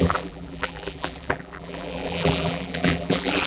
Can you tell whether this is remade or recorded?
remade